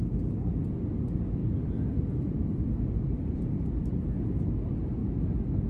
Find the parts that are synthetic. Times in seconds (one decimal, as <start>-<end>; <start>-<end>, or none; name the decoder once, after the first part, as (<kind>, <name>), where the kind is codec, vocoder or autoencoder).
1.4-4.0 (vocoder, BigVGAN v2)